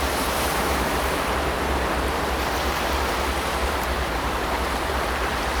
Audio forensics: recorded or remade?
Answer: remade